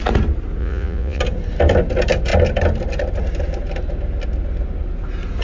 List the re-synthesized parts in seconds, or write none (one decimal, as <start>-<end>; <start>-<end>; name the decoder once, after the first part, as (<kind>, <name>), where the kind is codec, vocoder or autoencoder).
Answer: 0.6-1.2 (vocoder, Vocos)